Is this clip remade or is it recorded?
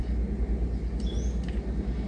recorded